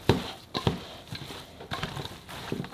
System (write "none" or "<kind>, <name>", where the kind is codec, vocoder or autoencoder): none